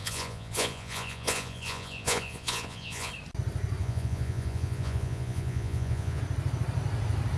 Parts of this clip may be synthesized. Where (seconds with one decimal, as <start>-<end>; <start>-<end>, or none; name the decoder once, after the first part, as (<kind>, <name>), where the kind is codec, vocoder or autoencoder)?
0.0-3.1 (vocoder, Vocos); 3.8-6.2